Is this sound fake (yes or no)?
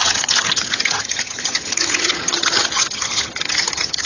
yes